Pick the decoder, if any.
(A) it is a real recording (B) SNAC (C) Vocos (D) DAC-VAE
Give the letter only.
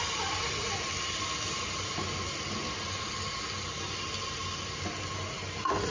A